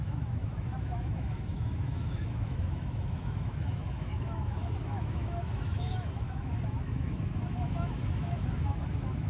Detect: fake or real fake